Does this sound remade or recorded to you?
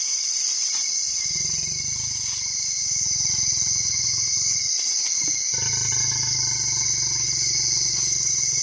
recorded